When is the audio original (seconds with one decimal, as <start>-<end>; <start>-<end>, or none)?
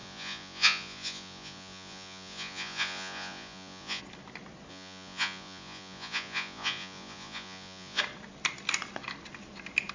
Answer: 4.0-4.7; 8.0-9.9